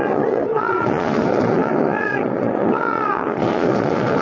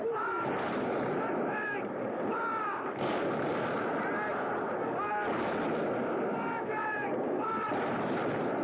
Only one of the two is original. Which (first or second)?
second